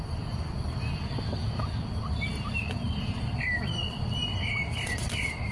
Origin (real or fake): real